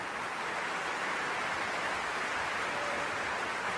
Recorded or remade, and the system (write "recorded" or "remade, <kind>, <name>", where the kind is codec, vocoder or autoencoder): remade, vocoder, BigVGAN v2